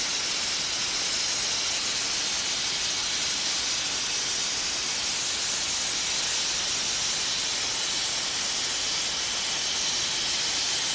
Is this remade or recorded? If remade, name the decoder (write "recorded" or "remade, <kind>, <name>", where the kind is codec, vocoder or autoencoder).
recorded